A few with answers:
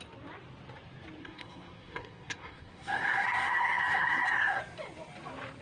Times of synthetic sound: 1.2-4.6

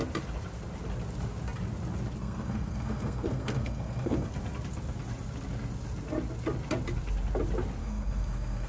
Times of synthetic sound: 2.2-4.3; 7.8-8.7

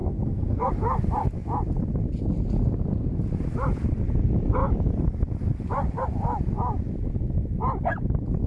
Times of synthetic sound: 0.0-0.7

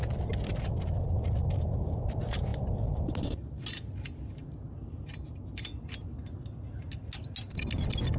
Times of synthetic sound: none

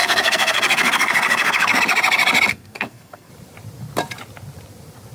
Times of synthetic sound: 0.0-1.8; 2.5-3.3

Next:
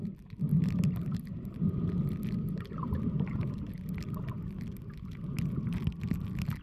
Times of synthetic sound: none

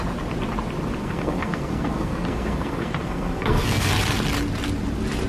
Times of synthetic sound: 1.0-3.9